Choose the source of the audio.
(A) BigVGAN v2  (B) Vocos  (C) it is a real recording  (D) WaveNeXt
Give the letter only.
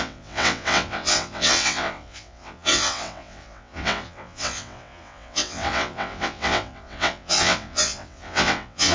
D